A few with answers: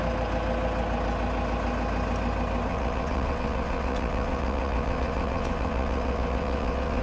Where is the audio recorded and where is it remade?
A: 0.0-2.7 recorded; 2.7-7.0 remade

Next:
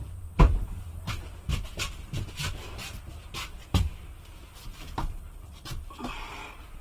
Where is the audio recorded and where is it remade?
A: 0.0-1.1 remade; 1.1-6.8 recorded

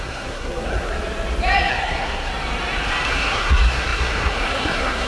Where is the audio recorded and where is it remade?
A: 0.0-0.9 remade; 0.9-1.7 recorded; 1.7-2.3 remade; 2.3-3.1 recorded; 3.1-5.1 remade

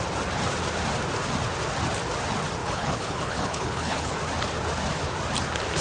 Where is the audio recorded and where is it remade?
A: 0.0-2.6 recorded; 2.6-4.1 remade; 4.1-5.8 recorded

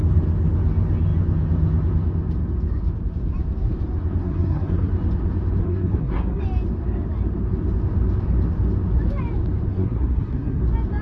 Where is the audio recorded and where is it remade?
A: 0.0-4.2 recorded; 4.2-4.9 remade; 4.9-5.6 recorded; 5.6-6.4 remade; 6.4-9.7 recorded; 9.7-10.6 remade; 10.6-11.0 recorded